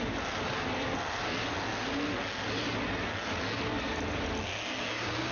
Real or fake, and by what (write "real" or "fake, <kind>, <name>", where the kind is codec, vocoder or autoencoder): real